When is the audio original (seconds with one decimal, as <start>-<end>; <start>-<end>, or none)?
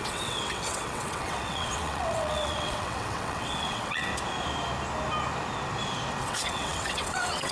4.1-6.2